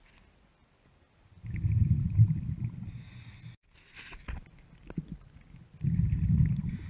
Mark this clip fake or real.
real